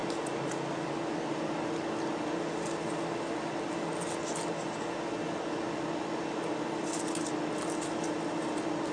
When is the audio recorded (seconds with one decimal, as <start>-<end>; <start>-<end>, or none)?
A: 0.0-8.9